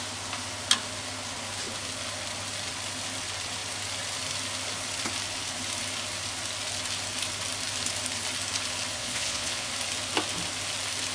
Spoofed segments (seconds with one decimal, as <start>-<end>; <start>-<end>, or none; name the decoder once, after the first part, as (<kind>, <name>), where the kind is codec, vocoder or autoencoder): 9.0-9.7 (vocoder, Vocos)